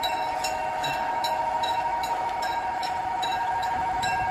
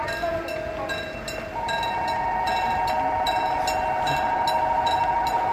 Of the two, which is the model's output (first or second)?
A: first